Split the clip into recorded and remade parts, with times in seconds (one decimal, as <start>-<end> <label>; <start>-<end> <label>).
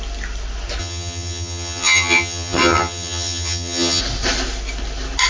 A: 0.0-0.8 recorded; 0.8-4.0 remade; 4.0-5.3 recorded